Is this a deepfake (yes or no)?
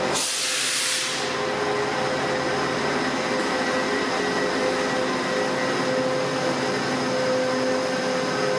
no